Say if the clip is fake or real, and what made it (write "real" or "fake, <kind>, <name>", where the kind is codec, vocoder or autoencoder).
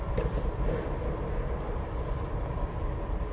real